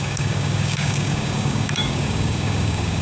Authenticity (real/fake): fake